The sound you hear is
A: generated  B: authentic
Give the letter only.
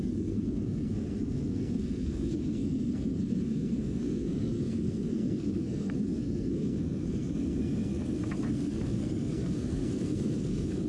A